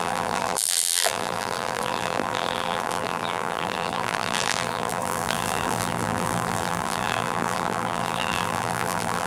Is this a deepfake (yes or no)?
yes